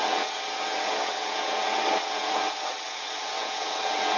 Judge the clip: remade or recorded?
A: remade